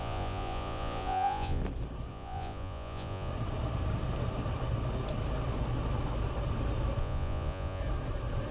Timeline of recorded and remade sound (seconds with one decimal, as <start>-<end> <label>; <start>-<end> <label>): 0.0-1.6 remade; 1.6-2.1 recorded; 2.1-3.3 remade; 3.3-7.0 recorded; 7.0-7.8 remade; 7.8-8.5 recorded